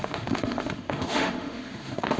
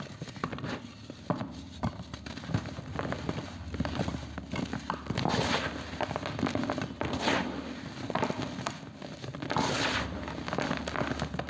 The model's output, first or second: first